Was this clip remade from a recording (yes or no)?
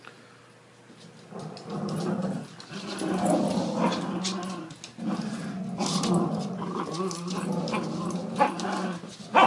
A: no